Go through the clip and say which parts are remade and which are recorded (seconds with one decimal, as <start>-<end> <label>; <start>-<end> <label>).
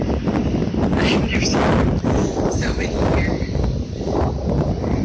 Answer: 0.0-2.2 recorded; 2.2-3.5 remade; 3.5-5.0 recorded